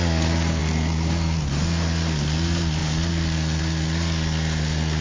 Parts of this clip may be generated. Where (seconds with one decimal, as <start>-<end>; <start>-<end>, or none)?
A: none